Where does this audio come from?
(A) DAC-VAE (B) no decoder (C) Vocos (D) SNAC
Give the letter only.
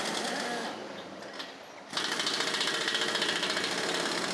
B